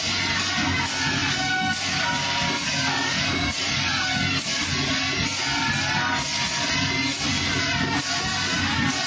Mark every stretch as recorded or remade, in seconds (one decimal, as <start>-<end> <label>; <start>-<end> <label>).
0.0-9.1 recorded